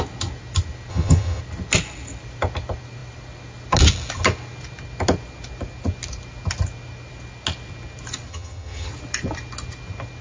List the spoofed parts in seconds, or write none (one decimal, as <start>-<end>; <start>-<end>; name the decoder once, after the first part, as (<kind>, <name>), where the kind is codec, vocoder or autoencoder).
0.9-1.4 (vocoder, HiFi-GAN); 8.3-8.9